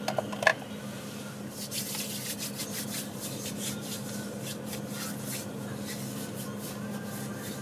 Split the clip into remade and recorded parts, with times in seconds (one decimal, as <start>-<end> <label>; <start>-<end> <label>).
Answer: 0.0-7.6 recorded